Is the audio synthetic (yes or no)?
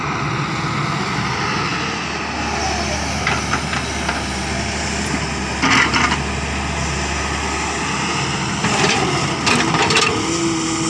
no